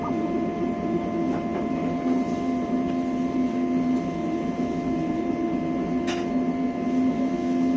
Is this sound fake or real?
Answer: real